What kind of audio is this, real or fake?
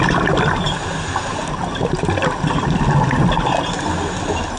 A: real